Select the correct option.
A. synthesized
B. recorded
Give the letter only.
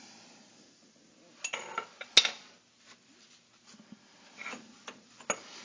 B